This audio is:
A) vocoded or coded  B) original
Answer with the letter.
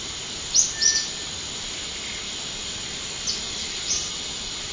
B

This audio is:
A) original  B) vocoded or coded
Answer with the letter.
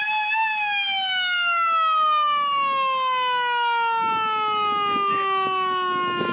A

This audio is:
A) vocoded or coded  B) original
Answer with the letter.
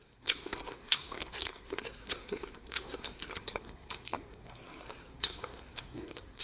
A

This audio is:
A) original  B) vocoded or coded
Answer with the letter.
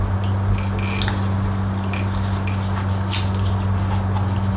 A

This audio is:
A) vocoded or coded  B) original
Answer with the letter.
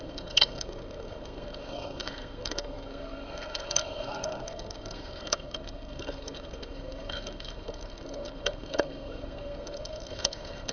A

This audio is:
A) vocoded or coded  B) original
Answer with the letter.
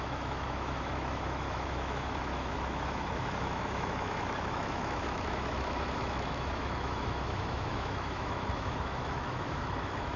A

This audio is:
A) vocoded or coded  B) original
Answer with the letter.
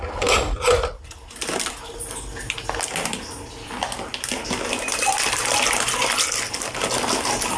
B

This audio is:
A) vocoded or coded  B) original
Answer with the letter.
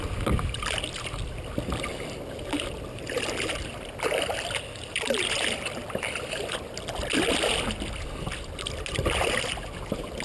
B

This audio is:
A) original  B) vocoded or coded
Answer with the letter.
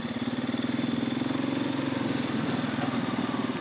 A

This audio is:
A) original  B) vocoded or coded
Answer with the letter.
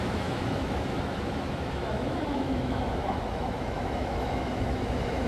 B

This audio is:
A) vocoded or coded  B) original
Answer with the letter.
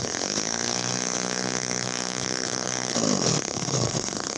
A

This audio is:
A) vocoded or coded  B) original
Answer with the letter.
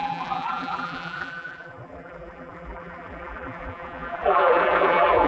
A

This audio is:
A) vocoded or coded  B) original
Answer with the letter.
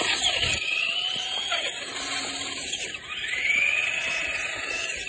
A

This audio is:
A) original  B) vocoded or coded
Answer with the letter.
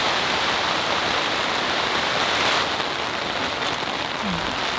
A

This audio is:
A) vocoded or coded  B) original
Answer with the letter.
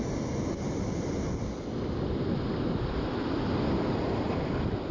B